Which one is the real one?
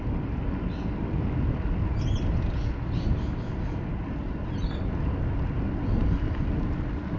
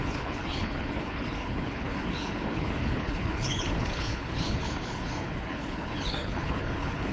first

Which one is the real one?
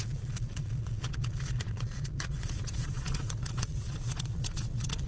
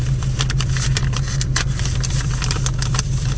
second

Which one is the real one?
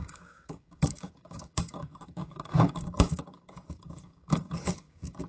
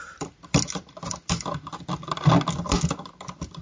second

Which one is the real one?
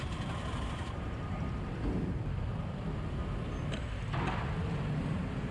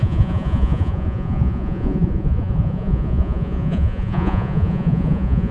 first